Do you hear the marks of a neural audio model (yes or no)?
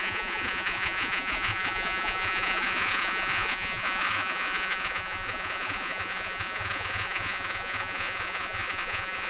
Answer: yes